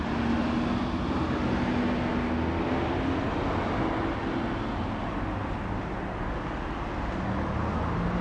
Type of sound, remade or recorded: recorded